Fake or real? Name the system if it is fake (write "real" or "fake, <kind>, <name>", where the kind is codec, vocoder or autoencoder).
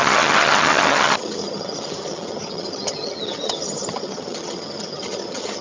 fake, vocoder, HiFi-GAN